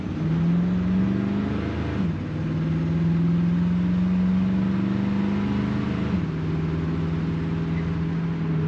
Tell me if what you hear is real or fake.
real